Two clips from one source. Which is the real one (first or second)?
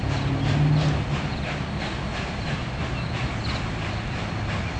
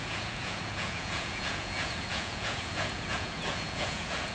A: first